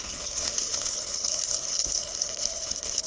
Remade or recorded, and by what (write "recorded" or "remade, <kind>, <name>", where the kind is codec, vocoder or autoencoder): remade, codec, HILCodec